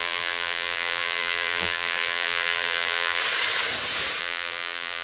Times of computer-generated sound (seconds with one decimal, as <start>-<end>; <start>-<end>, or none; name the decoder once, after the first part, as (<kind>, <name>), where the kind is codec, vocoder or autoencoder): 0.0-3.2 (vocoder, BigVGAN v2); 4.2-5.0